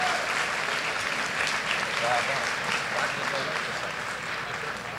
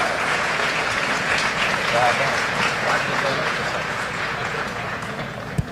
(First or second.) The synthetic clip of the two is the second